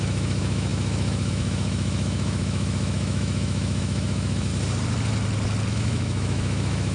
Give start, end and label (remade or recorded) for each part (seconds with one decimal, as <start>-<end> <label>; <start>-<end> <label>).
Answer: 0.0-4.5 remade; 4.5-5.7 recorded; 5.7-6.9 remade